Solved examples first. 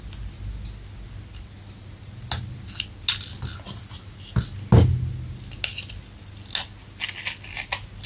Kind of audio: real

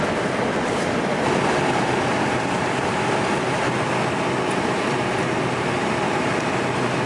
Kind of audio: real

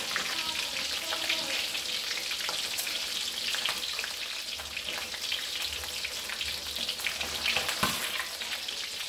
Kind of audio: real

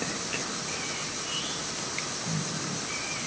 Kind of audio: real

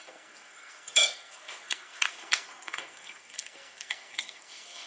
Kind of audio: fake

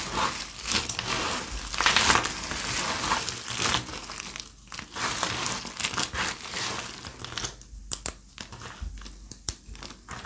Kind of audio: real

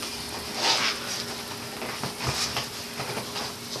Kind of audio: real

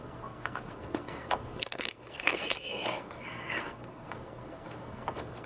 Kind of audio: fake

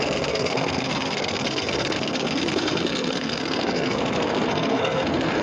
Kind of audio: fake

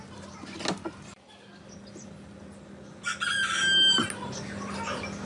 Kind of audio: real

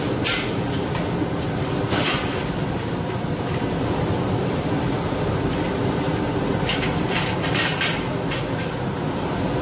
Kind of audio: real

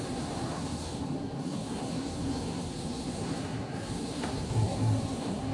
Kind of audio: fake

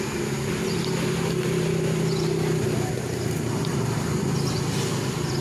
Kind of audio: real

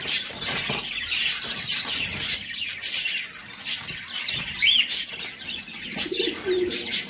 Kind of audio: real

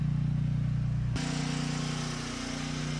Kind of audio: real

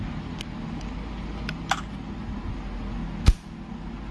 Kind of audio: real